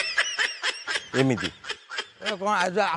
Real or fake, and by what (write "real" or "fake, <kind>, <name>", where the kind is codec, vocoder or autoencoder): real